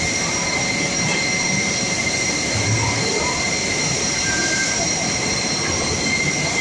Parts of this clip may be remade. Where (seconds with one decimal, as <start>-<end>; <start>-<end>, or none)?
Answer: 0.0-6.6